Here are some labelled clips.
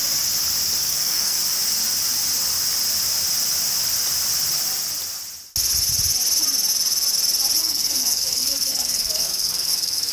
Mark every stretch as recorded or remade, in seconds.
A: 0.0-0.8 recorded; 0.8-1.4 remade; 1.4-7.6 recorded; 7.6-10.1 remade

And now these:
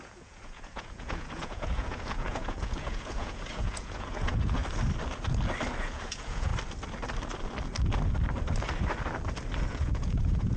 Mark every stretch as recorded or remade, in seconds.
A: 0.0-4.6 remade; 4.6-5.8 recorded; 5.8-6.5 remade; 6.5-9.7 recorded; 9.7-10.6 remade

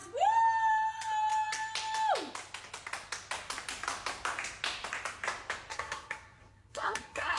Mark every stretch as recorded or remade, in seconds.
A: 0.0-5.7 recorded; 5.7-7.4 remade

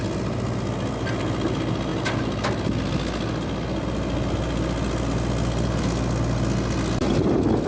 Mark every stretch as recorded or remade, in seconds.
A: 0.0-7.7 recorded

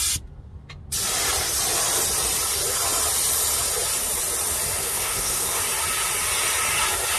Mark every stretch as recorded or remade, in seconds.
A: 0.0-4.8 recorded; 4.8-5.6 remade; 5.6-7.2 recorded

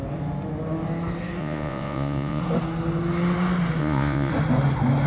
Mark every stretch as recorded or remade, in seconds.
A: 0.0-1.4 recorded; 1.4-2.4 remade; 2.4-3.8 recorded; 3.8-4.3 remade; 4.3-5.1 recorded

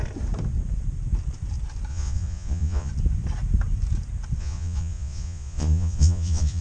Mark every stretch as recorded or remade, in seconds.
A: 0.0-1.9 recorded; 1.9-2.9 remade; 2.9-4.4 recorded; 4.4-6.6 remade